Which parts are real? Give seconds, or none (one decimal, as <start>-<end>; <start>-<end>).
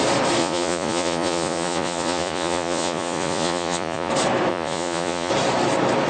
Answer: 0.0-0.4; 4.1-4.5; 5.3-6.1